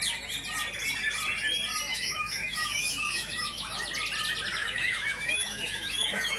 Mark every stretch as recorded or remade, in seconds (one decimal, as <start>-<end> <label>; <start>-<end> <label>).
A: 0.0-1.9 recorded; 1.9-3.8 remade; 3.8-4.6 recorded; 4.6-6.4 remade